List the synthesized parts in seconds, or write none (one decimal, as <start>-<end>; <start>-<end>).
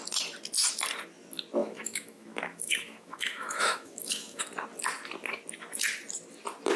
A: 1.6-4.4